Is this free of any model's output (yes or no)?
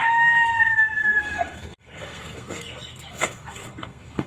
no